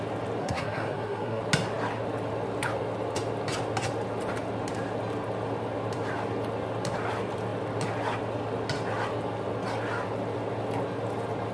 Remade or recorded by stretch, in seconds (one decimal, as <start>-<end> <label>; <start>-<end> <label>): 0.0-0.4 recorded; 0.4-1.4 remade; 1.4-11.5 recorded